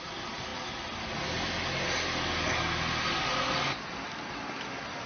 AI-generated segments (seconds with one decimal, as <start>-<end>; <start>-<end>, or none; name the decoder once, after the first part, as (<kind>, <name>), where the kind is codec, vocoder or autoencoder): none

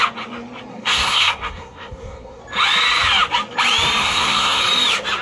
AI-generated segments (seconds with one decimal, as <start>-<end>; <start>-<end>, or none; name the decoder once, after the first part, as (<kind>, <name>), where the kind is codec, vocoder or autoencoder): 0.7-2.4 (codec, SNAC); 4.0-4.6